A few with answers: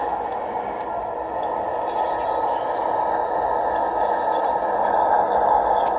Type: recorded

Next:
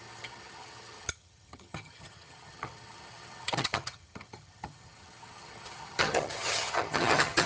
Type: remade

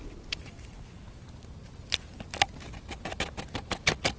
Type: recorded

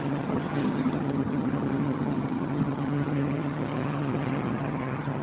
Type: remade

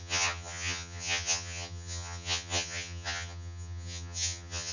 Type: remade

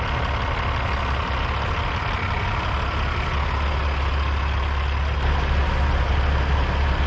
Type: recorded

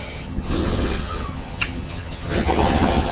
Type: remade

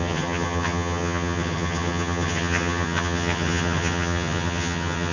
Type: remade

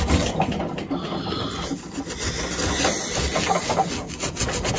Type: recorded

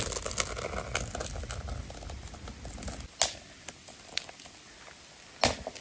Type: recorded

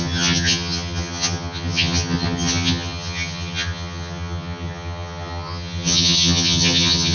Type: remade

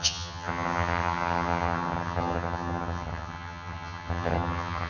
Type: remade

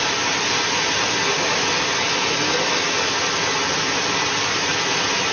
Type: recorded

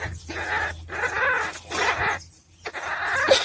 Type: recorded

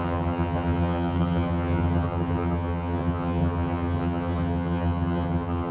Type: remade